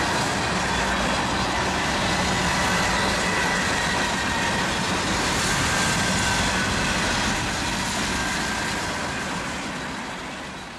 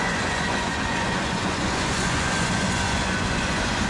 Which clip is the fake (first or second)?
second